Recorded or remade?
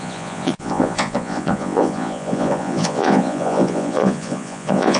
remade